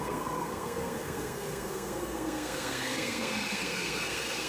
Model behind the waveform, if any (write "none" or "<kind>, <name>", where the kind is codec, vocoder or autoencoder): codec, SNAC